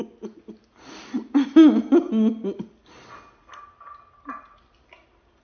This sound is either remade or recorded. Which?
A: recorded